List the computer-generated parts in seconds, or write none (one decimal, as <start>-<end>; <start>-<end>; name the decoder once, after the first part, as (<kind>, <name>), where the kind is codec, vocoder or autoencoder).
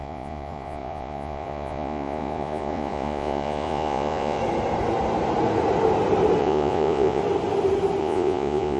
0.0-4.4 (vocoder, Vocos); 6.4-7.2; 8.0-8.8